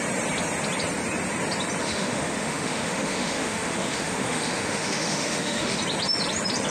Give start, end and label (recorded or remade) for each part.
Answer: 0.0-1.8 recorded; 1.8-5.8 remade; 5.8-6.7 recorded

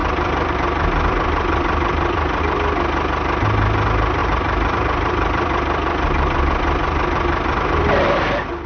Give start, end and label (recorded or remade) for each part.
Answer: 0.0-2.4 remade; 2.4-4.2 recorded; 4.2-8.7 remade

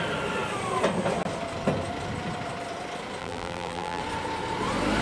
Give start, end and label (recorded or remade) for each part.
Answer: 0.0-3.2 recorded; 3.2-4.0 remade; 4.0-5.0 recorded

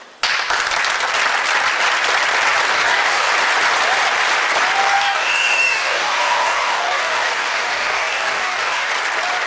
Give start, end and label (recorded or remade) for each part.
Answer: 0.0-2.7 recorded; 2.7-3.3 remade; 3.3-4.8 recorded; 4.8-8.9 remade; 8.9-9.5 recorded